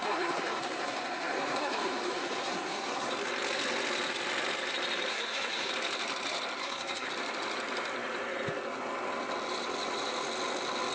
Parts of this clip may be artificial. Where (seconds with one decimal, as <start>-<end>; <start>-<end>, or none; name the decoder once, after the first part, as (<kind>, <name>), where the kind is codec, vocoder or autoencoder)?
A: 0.0-3.1 (codec, SNAC); 5.1-5.7; 6.6-7.1